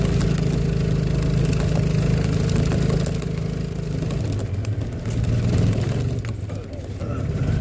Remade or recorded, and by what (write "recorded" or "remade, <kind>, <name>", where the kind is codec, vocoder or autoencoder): recorded